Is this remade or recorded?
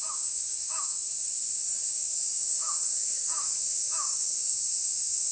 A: remade